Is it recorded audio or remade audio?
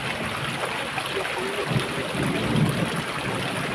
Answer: recorded